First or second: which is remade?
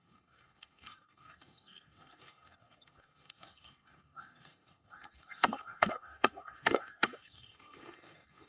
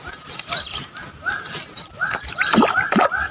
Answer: first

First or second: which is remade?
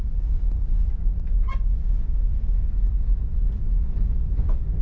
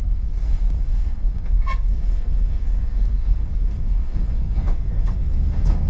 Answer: second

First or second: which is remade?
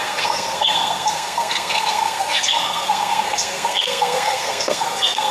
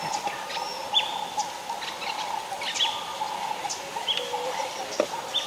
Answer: first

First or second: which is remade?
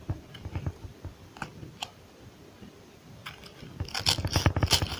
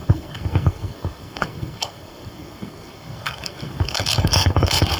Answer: second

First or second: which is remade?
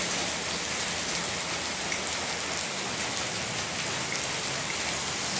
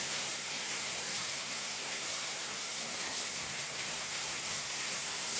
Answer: second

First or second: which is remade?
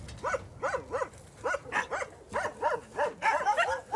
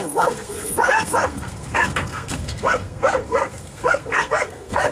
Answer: second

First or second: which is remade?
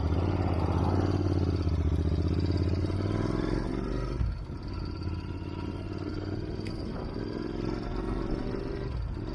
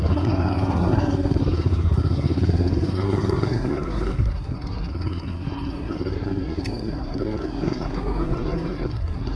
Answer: second